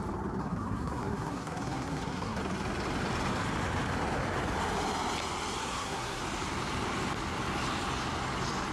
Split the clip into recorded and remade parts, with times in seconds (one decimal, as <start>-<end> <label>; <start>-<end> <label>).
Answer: 0.0-0.4 recorded; 0.4-2.4 remade; 2.4-5.6 recorded; 5.6-6.2 remade; 6.2-8.7 recorded